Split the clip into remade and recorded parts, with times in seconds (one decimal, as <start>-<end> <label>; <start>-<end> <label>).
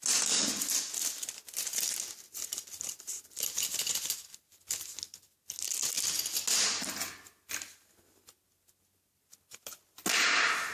0.0-10.7 recorded